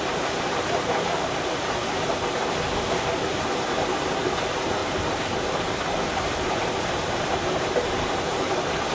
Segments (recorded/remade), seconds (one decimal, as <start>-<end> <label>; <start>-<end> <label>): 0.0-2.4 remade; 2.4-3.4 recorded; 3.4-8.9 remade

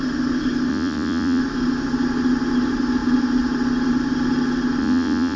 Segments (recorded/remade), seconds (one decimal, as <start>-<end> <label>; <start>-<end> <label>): 0.0-0.7 recorded; 0.7-1.4 remade; 1.4-4.8 recorded; 4.8-5.4 remade

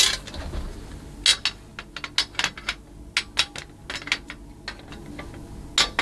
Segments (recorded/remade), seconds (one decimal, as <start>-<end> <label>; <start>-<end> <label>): 0.0-6.0 recorded

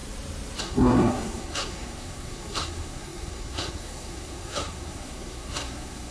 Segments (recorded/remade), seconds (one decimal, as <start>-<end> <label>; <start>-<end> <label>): 0.0-0.6 recorded; 0.6-6.1 remade

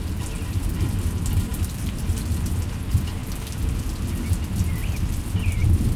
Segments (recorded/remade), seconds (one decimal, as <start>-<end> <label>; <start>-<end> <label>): 0.0-3.2 remade; 3.2-4.1 recorded; 4.1-6.0 remade